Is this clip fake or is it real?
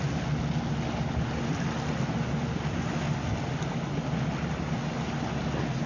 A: real